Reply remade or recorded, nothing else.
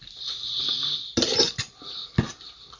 recorded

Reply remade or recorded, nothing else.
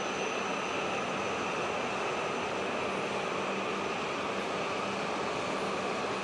recorded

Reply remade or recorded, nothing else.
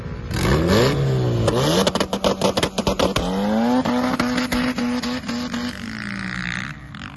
recorded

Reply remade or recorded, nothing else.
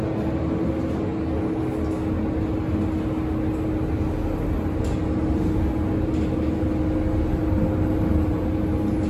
recorded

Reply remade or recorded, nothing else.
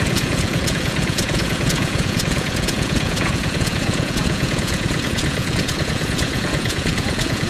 remade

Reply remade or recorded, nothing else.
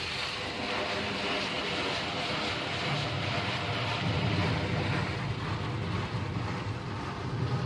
recorded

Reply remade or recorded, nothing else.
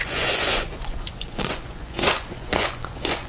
remade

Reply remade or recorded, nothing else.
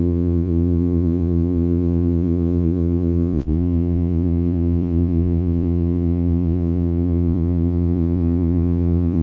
remade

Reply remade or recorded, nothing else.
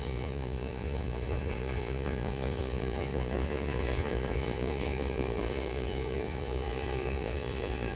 remade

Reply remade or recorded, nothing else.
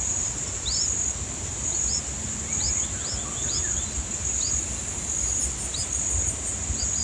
recorded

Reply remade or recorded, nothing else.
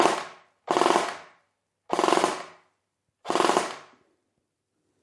recorded